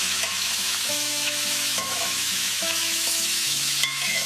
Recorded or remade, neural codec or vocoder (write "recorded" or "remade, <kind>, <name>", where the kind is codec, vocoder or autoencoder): remade, autoencoder, DAC-VAE